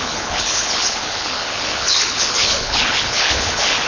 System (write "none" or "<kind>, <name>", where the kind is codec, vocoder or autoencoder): codec, HILCodec